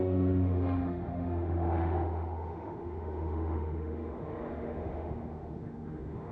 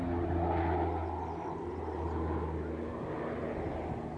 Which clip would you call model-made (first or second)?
first